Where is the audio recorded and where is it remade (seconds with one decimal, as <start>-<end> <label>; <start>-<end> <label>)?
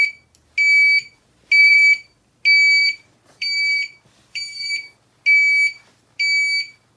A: 0.0-1.6 recorded; 1.6-2.3 remade; 2.3-2.8 recorded; 2.8-5.0 remade; 5.0-7.0 recorded